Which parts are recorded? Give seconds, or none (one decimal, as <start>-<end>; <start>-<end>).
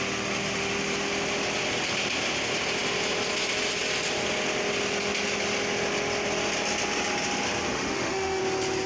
0.0-7.7; 8.4-8.9